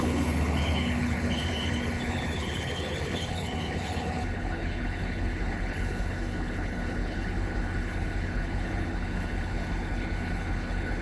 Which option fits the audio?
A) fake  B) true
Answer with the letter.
A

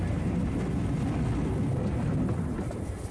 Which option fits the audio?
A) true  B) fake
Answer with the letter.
A